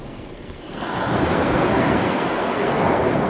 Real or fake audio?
fake